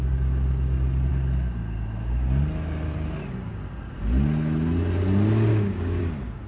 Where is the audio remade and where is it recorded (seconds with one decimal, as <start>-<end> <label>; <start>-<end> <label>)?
0.0-5.5 recorded; 5.5-6.0 remade; 6.0-6.5 recorded